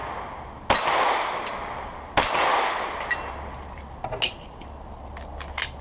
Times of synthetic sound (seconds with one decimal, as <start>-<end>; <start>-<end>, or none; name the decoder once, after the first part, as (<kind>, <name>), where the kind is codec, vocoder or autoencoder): none